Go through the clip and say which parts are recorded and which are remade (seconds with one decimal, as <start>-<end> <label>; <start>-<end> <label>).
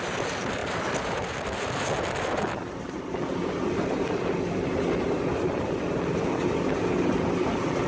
0.0-7.9 recorded